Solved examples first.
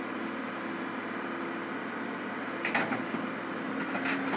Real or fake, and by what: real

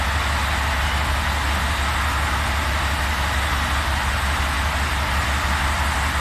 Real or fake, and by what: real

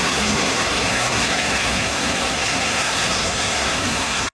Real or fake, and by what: fake, codec, SNAC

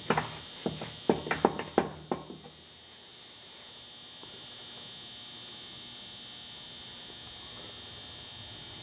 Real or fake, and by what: real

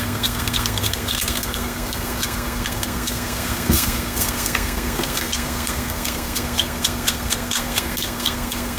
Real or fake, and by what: fake, codec, SNAC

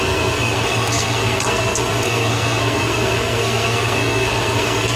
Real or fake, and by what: fake, codec, SNAC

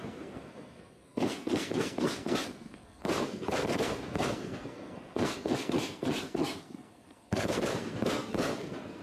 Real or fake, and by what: fake, codec, SNAC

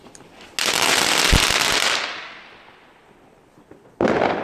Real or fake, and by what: real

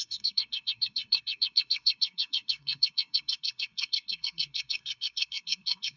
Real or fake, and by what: fake, codec, SNAC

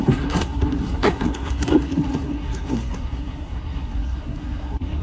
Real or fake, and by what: fake, codec, SNAC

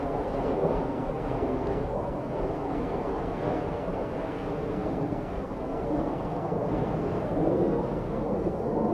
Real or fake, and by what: fake, codec, SNAC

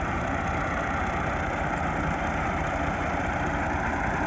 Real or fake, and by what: real